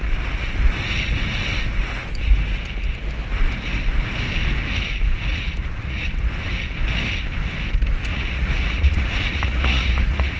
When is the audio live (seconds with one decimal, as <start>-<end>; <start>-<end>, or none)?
0.0-5.3; 6.1-8.1